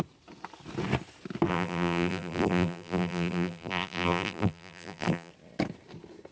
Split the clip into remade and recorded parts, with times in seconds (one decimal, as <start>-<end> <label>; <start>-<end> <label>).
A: 0.0-1.5 recorded; 1.5-5.3 remade; 5.3-6.3 recorded